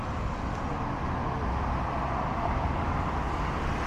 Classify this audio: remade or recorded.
recorded